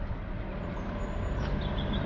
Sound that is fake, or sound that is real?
real